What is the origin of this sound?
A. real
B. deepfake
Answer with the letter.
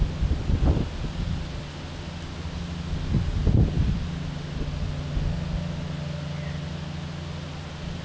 A